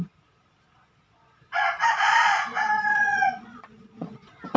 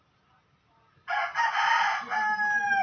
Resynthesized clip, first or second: first